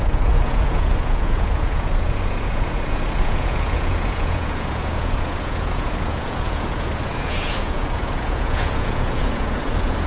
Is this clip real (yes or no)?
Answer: no